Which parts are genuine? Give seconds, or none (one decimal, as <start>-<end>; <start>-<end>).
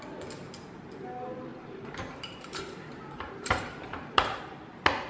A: 0.0-1.5; 4.4-5.1